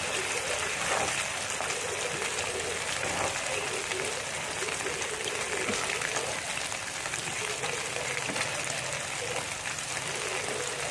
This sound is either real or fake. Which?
real